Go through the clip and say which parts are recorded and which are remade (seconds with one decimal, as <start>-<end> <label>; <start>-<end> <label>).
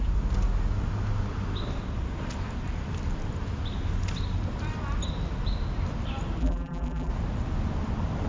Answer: 0.0-6.4 recorded; 6.4-7.1 remade; 7.1-8.3 recorded